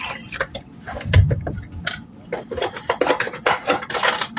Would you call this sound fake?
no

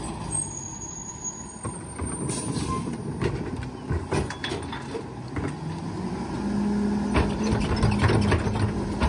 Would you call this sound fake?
no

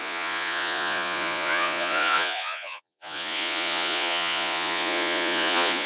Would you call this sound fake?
yes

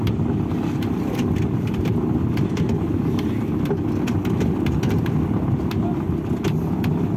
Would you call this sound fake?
no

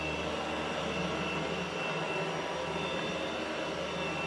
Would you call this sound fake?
no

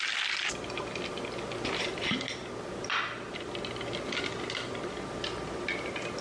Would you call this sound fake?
no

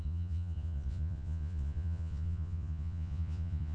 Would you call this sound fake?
yes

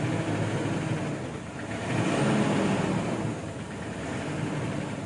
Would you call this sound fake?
no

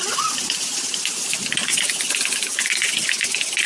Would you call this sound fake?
no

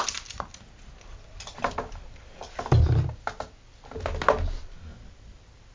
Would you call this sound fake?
no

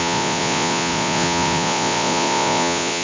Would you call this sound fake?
yes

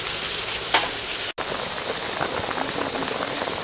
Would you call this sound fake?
no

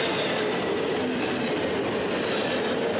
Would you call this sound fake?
no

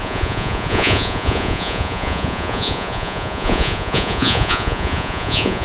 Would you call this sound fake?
yes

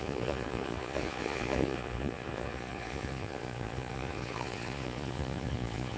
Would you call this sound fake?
yes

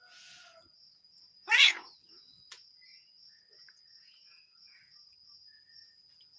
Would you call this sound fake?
yes